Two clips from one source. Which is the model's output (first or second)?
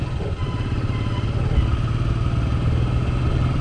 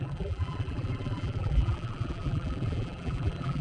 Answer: second